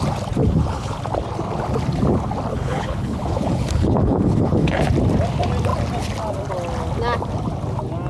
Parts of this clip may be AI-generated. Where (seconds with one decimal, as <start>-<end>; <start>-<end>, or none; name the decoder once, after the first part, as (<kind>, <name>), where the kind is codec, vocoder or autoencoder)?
0.4-1.0 (codec, HILCodec); 2.5-4.8